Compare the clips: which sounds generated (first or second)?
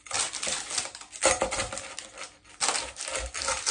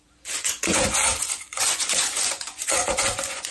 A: second